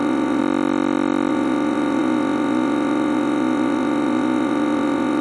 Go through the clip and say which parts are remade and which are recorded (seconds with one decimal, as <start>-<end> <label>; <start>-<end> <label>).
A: 0.0-0.4 remade; 0.4-1.3 recorded; 1.3-5.2 remade

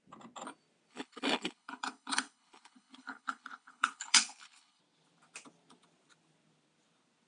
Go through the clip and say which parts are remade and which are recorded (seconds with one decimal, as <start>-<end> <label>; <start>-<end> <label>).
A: 0.0-0.9 recorded; 0.9-4.8 remade; 4.8-7.3 recorded